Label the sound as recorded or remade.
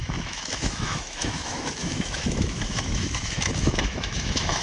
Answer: remade